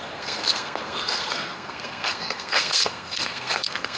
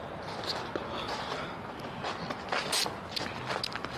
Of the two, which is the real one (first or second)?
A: second